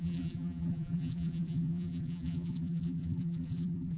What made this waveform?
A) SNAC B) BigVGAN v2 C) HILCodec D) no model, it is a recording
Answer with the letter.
B